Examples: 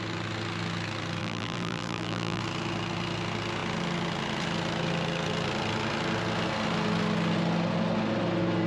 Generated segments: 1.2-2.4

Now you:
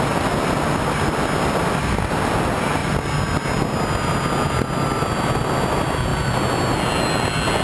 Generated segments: none

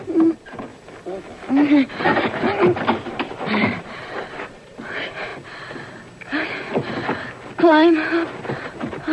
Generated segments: 0.0-0.7; 1.5-5.3; 8.5-9.1

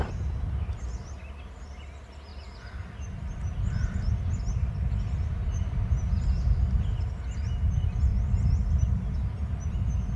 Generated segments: none

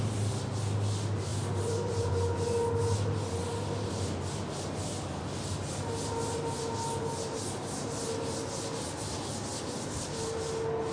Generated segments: 1.3-2.1